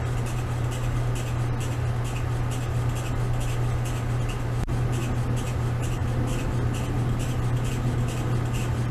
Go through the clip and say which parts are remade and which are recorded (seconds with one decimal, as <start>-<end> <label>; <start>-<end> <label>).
0.0-8.9 recorded